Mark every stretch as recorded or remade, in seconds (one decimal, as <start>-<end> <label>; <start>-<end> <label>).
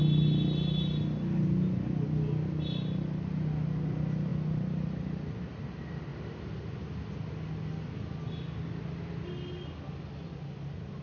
0.0-11.0 recorded